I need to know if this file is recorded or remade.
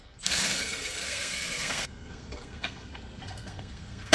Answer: remade